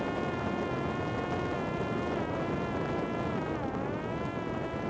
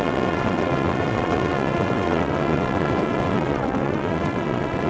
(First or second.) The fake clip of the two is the second